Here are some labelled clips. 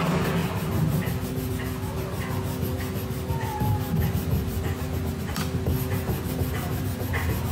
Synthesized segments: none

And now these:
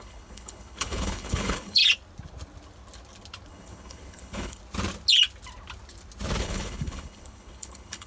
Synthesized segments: 0.0-1.8 (codec, HILCodec); 3.5-4.6; 6.4-8.1

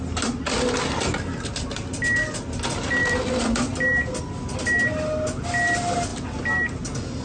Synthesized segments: none

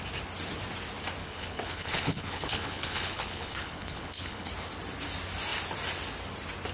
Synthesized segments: 1.2-4.5 (codec, HILCodec)

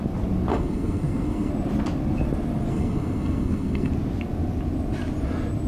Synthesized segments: 0.5-1.5 (codec, SNAC); 2.7-3.9